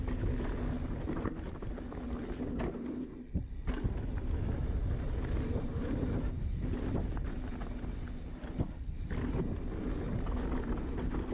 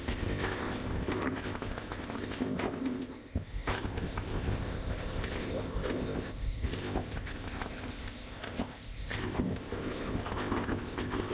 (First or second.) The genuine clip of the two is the first